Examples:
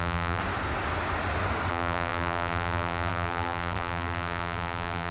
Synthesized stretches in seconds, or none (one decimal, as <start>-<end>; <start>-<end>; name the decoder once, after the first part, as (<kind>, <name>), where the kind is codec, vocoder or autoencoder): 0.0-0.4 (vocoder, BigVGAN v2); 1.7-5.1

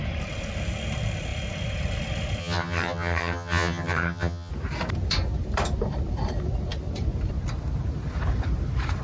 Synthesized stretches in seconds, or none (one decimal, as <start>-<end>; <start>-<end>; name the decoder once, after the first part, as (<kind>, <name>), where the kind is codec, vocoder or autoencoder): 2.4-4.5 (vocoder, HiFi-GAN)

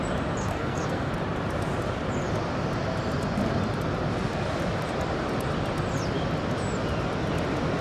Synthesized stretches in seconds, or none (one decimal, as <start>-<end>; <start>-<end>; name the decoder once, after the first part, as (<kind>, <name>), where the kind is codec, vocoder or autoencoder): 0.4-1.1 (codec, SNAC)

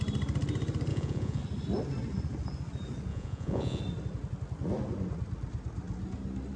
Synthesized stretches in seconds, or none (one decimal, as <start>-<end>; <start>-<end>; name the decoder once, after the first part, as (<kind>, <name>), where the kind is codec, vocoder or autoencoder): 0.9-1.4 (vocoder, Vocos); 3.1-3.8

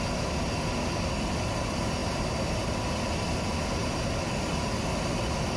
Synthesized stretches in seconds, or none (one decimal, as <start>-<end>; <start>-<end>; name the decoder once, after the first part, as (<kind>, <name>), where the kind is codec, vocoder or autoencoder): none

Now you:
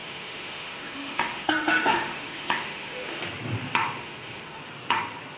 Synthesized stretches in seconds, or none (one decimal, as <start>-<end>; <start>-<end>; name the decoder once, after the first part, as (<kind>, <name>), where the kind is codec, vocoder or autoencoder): 0.0-3.2 (autoencoder, DAC-VAE); 4.0-4.6

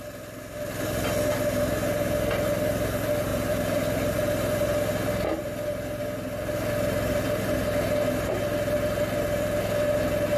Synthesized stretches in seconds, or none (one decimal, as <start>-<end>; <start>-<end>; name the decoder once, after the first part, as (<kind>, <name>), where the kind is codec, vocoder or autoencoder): none